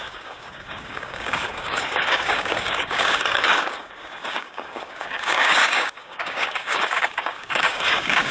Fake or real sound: fake